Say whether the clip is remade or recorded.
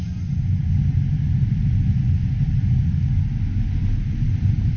recorded